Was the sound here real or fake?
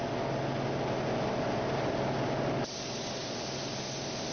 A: real